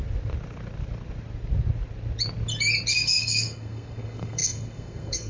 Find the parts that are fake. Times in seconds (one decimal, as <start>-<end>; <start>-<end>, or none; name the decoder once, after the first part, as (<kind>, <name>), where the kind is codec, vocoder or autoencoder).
2.9-5.3 (codec, SNAC)